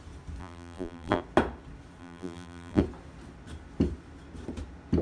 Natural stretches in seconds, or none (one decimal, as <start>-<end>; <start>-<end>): 0.0-0.4; 1.2-2.0; 2.8-5.0